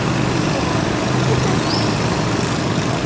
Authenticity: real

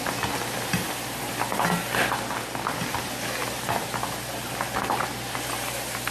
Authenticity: real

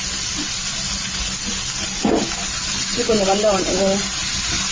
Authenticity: real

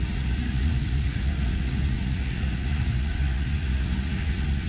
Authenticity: fake